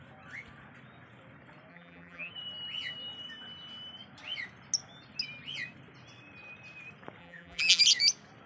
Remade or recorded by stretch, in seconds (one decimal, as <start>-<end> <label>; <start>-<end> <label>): 0.0-1.7 recorded; 1.7-2.3 remade; 2.3-7.2 recorded; 7.2-7.8 remade; 7.8-8.5 recorded